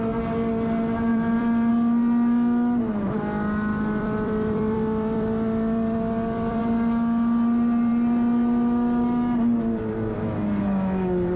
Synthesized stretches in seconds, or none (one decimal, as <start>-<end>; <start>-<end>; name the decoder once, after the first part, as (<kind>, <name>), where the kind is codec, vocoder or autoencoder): 1.1-1.7 (vocoder, BigVGAN v2); 3.7-6.6

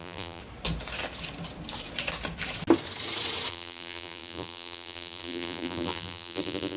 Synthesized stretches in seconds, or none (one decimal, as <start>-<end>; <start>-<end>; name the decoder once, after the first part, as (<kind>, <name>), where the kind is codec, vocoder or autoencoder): 0.0-0.4 (vocoder, BigVGAN v2); 3.5-6.8